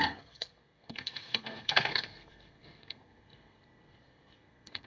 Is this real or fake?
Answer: fake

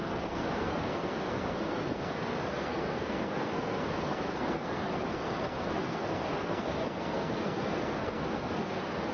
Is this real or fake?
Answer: fake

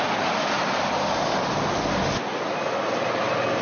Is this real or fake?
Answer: real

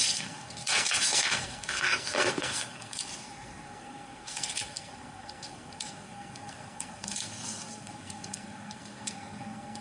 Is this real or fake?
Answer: fake